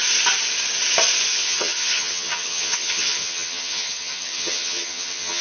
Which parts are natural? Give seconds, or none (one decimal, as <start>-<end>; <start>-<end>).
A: 0.0-1.3